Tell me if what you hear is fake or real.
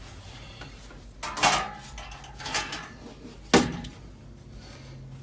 real